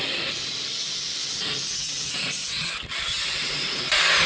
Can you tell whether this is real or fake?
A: real